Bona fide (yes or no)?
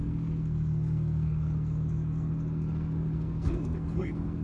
no